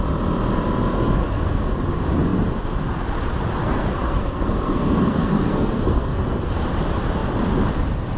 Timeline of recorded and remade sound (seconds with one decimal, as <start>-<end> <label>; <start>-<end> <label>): 0.0-1.2 recorded; 1.2-1.7 remade; 1.7-3.6 recorded; 3.6-6.6 remade; 6.6-8.2 recorded

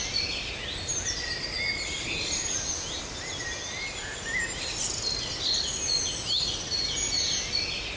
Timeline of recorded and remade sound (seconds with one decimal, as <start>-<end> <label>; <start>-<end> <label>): 0.0-8.0 recorded

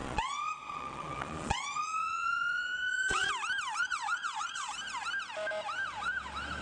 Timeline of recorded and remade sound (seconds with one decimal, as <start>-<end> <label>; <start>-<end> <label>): 0.0-3.3 remade; 3.3-3.8 recorded; 3.8-4.7 remade; 4.7-6.6 recorded

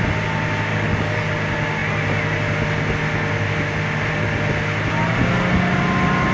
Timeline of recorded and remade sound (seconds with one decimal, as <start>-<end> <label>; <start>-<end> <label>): 0.0-0.7 recorded; 0.7-1.3 remade; 1.3-6.3 recorded

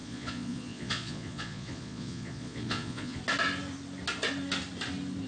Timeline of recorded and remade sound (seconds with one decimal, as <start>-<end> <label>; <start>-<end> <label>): 0.0-3.2 remade; 3.2-5.3 recorded